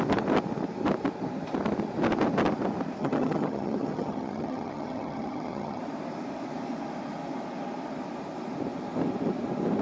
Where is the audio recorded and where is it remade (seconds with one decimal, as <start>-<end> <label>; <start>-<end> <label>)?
0.0-3.0 recorded; 3.0-5.8 remade; 5.8-9.8 recorded